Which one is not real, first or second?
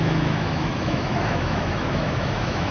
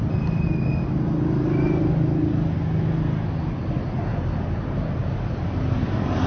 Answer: first